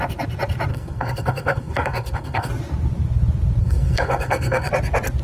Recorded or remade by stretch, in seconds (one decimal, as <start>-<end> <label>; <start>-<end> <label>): 0.0-0.7 recorded; 0.7-2.5 remade; 2.5-3.6 recorded; 3.6-4.7 remade; 4.7-5.2 recorded